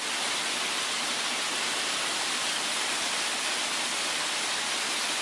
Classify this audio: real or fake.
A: real